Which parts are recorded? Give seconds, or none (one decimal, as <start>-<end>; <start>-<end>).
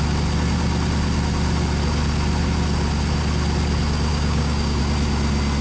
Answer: 0.0-4.1; 4.8-5.6